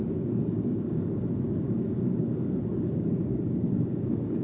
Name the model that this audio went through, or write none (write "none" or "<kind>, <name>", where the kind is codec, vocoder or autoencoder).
codec, DAC